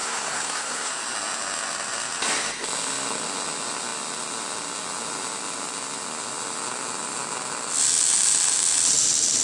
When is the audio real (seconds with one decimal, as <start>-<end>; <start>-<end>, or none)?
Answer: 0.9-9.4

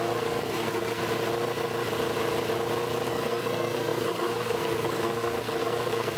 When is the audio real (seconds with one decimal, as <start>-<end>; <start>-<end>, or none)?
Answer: 1.0-3.1

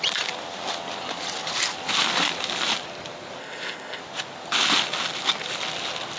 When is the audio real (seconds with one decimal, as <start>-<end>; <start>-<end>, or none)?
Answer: 0.0-3.4; 4.0-6.2